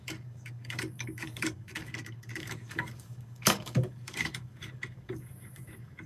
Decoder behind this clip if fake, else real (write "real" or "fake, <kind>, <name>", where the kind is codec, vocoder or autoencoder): fake, codec, DAC